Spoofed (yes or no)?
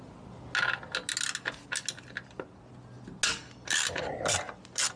no